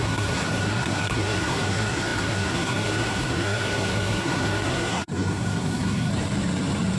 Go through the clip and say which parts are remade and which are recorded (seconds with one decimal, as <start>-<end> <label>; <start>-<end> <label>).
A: 0.0-6.1 remade; 6.1-7.0 recorded